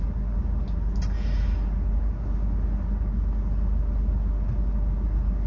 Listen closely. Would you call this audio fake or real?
real